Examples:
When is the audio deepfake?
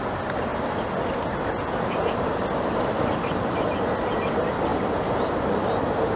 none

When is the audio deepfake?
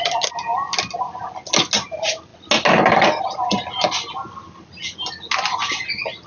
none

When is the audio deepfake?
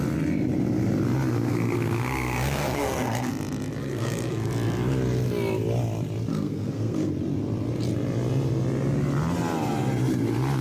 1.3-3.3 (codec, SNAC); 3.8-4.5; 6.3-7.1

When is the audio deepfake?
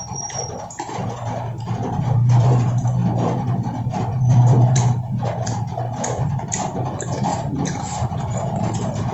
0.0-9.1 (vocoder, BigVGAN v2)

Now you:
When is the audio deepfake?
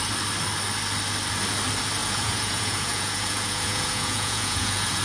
2.0-5.0 (vocoder, Vocos)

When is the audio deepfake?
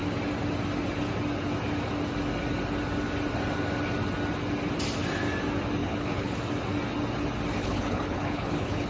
5.8-6.4 (codec, HILCodec); 7.6-8.9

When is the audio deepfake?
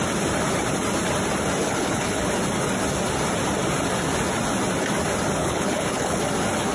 1.6-2.3 (codec, HILCodec); 5.4-6.2